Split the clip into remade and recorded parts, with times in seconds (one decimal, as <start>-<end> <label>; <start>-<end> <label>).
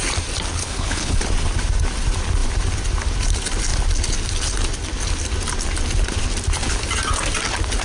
0.0-0.6 recorded; 0.6-1.2 remade; 1.2-7.8 recorded